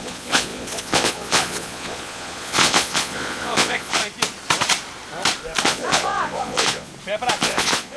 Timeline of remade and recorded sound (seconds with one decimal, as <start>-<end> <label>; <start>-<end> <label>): 0.0-4.0 remade; 4.0-5.6 recorded; 5.6-6.9 remade; 6.9-7.4 recorded; 7.4-8.0 remade

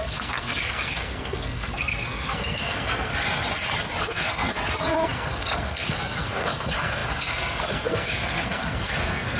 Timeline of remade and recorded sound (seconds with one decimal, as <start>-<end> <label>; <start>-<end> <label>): 0.0-3.1 remade; 3.1-4.0 recorded; 4.0-9.4 remade

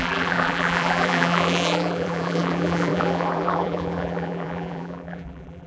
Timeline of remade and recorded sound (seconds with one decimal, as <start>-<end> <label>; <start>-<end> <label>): 0.0-5.7 remade